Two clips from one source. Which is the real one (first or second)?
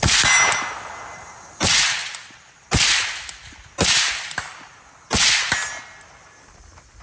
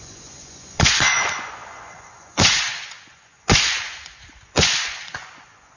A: first